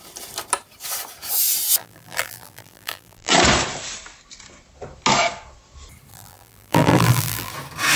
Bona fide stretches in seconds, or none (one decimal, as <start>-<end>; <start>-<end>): 0.0-1.8; 3.3-6.1; 7.5-8.0